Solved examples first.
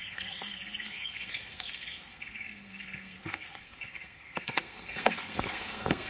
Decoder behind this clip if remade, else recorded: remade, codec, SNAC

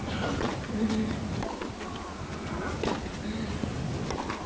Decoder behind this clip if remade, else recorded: recorded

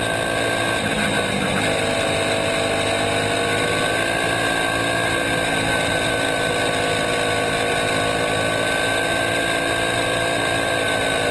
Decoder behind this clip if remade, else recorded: recorded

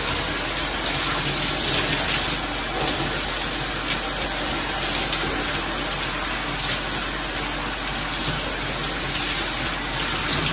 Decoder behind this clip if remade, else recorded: recorded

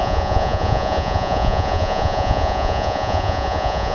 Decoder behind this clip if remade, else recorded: remade, vocoder, Vocos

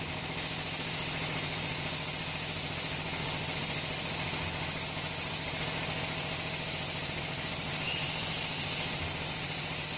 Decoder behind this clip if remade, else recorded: recorded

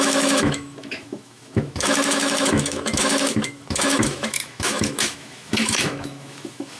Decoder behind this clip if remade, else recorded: remade, autoencoder, DAC-VAE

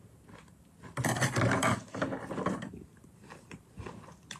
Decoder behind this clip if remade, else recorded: recorded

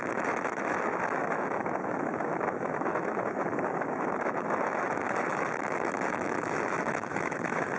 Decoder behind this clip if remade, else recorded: remade, autoencoder, DAC-VAE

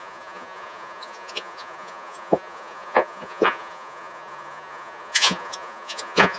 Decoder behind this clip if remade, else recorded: remade, vocoder, Vocos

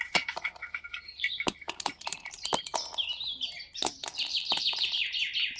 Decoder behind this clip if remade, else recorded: remade, vocoder, BigVGAN v2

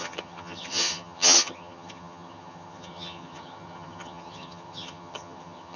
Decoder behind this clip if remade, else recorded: remade, vocoder, HiFi-GAN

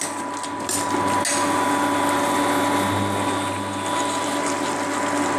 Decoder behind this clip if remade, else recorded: recorded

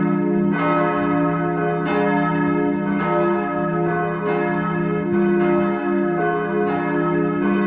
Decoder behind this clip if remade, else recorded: recorded